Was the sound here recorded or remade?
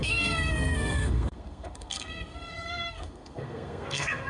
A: remade